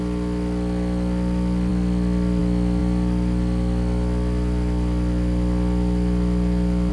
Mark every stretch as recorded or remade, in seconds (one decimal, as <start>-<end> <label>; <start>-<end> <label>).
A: 0.0-6.9 recorded